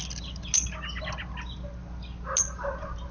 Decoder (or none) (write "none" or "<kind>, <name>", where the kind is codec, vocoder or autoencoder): none